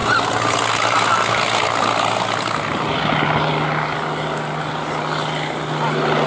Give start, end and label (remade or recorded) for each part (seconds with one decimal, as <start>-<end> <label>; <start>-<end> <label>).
0.0-6.3 recorded